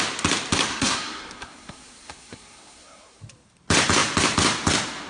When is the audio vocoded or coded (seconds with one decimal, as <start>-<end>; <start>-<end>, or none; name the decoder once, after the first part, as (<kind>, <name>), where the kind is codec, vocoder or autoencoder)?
0.7-3.2 (codec, SNAC)